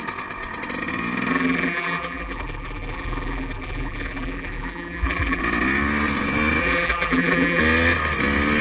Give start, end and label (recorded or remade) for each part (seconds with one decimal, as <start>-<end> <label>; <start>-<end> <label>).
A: 0.0-1.3 recorded; 1.3-5.4 remade; 5.4-6.6 recorded; 6.6-7.6 remade; 7.6-8.6 recorded